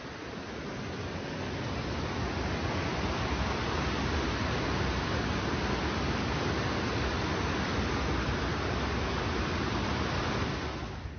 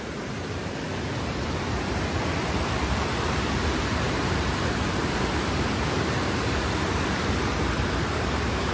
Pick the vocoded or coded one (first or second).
second